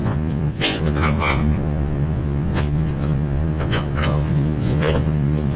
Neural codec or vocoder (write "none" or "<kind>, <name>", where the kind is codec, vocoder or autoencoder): vocoder, Vocos